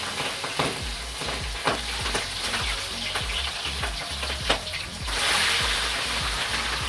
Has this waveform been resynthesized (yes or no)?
no